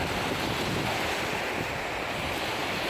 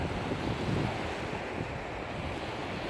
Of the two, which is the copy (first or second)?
first